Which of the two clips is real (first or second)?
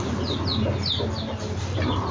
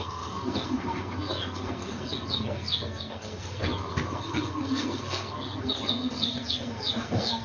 first